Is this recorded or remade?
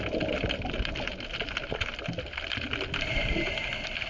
recorded